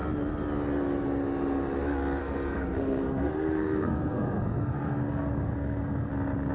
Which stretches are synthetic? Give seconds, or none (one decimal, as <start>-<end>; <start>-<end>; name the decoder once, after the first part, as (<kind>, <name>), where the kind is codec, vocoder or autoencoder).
2.2-6.1 (codec, SNAC)